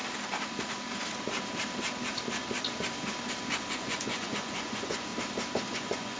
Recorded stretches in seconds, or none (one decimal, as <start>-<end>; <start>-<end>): 0.0-3.7; 5.1-5.7